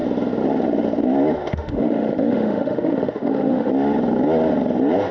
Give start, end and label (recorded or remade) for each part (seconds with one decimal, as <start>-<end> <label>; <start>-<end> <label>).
0.0-1.5 recorded; 1.5-3.7 remade; 3.7-5.1 recorded